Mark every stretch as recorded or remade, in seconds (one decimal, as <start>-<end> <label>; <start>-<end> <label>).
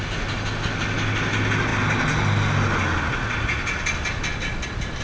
0.0-5.0 recorded